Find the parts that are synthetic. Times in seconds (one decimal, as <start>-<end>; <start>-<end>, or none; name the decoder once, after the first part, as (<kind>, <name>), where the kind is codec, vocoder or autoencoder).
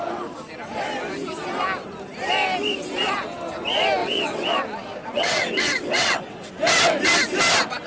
4.0-4.5 (vocoder, WaveNeXt); 5.0-6.5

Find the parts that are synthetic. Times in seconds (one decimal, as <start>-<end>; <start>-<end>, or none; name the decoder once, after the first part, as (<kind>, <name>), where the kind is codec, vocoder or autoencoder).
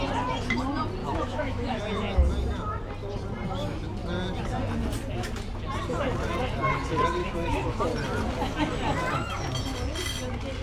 1.0-1.8 (autoencoder, DAC-VAE); 7.2-7.8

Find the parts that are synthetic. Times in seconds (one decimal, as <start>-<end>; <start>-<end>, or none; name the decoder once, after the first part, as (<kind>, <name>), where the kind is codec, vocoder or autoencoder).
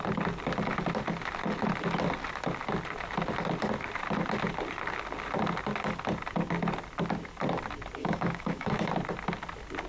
8.0-8.9 (autoencoder, DAC-VAE)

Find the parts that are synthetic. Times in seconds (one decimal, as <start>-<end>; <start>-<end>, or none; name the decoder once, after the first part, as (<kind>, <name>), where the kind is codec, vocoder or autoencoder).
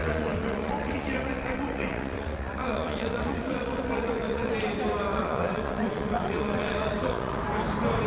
0.0-4.5 (vocoder, WaveNeXt); 5.1-7.4